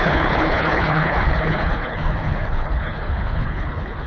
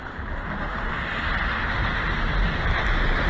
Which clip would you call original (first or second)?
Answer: second